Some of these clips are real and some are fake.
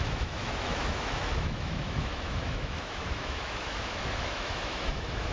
fake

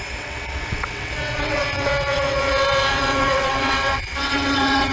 fake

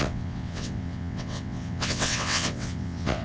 fake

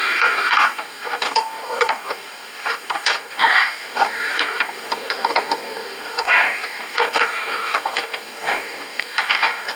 fake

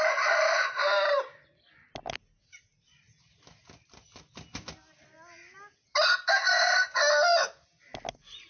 real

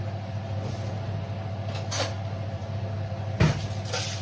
real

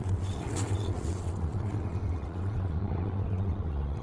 fake